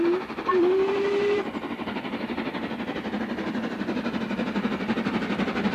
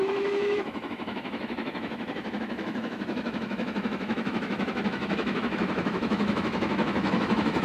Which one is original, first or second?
first